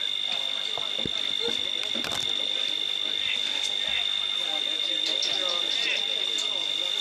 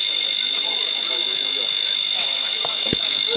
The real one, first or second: first